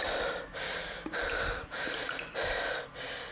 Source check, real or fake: real